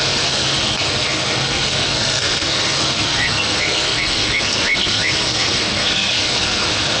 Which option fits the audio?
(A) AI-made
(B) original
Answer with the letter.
A